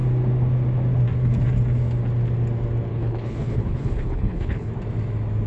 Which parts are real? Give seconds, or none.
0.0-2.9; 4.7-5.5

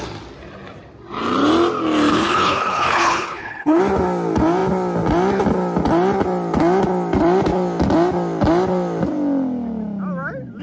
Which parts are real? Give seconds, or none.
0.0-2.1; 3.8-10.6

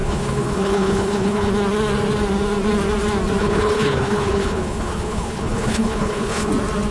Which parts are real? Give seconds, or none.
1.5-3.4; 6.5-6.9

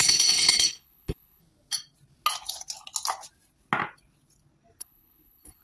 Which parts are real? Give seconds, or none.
1.4-4.8

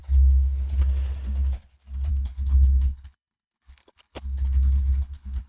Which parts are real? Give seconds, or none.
0.0-2.1